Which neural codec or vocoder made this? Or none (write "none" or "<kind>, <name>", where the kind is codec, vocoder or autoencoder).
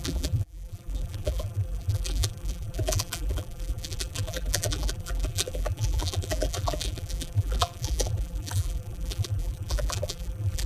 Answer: vocoder, BigVGAN v2